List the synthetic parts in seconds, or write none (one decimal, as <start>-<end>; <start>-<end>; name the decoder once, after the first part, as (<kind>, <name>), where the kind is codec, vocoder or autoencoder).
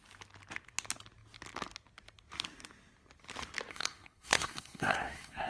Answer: 3.7-5.5 (codec, SNAC)